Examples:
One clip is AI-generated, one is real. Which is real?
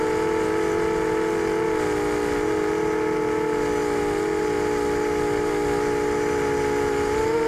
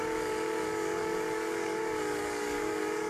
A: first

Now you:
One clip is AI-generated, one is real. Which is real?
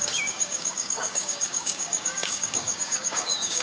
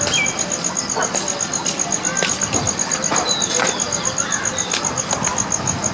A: second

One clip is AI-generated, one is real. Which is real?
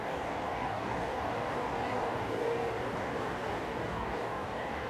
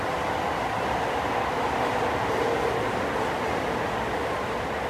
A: second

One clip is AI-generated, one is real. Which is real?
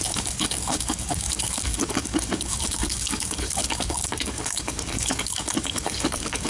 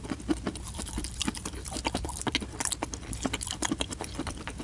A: second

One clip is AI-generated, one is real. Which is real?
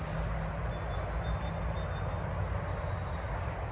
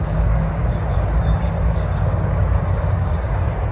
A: first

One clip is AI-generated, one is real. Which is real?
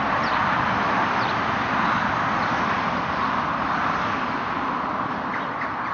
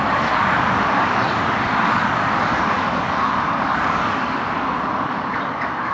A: first